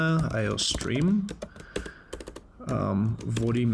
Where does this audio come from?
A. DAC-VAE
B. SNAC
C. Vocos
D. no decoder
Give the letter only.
D